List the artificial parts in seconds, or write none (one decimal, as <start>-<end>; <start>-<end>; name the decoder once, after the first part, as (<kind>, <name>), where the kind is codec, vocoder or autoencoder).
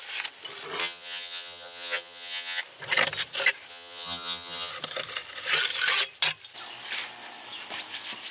0.8-2.6 (vocoder, HiFi-GAN); 3.7-4.7